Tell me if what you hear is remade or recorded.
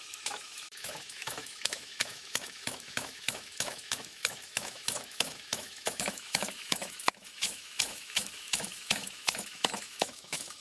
remade